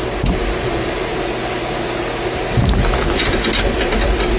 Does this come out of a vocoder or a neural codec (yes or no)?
no